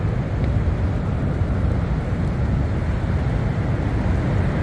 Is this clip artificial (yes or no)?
no